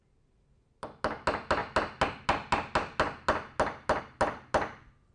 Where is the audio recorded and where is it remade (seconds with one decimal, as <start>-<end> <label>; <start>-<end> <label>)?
0.0-5.1 recorded